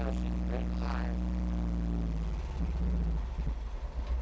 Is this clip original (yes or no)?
yes